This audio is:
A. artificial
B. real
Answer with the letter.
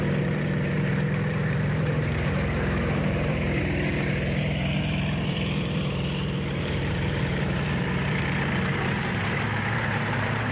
A